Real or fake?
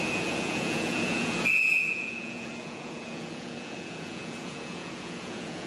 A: fake